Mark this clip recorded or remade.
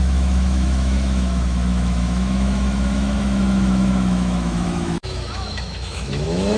remade